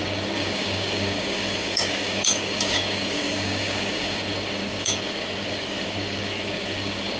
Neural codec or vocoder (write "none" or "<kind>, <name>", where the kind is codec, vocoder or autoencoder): codec, DAC